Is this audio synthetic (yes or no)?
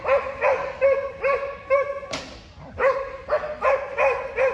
no